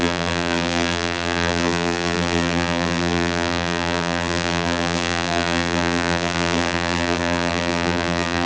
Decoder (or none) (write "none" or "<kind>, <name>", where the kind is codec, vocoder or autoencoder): vocoder, BigVGAN v2